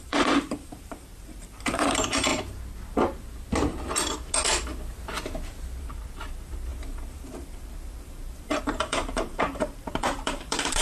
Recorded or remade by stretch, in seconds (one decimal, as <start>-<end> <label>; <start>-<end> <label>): 0.0-2.3 remade; 2.3-5.8 recorded; 5.8-10.8 remade